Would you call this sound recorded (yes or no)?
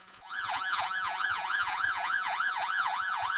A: no